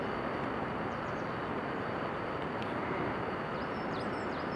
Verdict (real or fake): fake